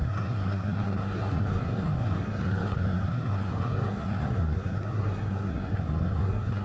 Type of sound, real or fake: fake